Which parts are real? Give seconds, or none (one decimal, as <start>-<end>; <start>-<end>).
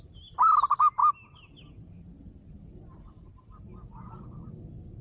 0.0-5.0